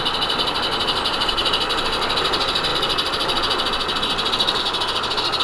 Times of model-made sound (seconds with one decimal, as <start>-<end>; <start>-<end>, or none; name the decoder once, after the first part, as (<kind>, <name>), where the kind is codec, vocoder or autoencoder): none